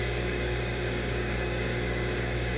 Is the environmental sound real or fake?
fake